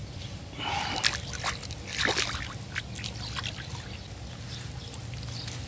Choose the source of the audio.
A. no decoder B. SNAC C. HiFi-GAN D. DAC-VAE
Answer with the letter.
A